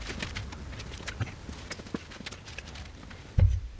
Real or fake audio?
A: real